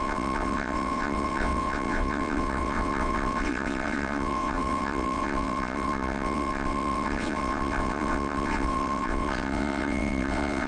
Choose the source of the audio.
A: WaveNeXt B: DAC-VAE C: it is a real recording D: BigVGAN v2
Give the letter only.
A